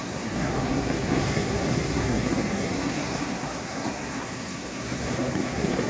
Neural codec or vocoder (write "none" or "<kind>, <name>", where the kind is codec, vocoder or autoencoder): codec, SNAC